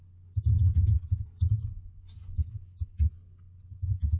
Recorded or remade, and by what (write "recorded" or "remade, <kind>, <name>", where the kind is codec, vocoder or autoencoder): recorded